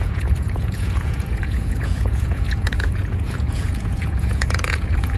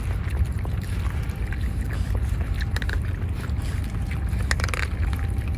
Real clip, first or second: second